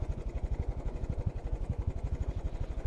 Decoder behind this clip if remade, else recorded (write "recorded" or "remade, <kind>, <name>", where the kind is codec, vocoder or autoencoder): remade, vocoder, Vocos